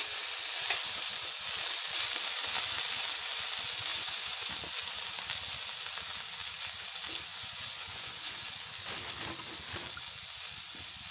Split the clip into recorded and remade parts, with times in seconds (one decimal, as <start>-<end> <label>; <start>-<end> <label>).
0.0-3.9 recorded; 3.9-4.5 remade; 4.5-7.3 recorded; 7.3-8.4 remade; 8.4-11.1 recorded